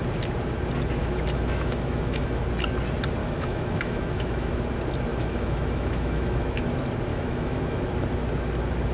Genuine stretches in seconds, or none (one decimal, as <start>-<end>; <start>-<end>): 0.0-1.0; 2.4-3.2; 4.5-5.1; 6.6-7.1; 7.9-8.9